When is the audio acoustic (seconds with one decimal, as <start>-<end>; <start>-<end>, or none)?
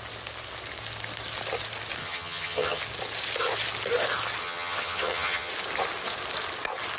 0.0-2.0; 2.8-4.4; 5.5-7.0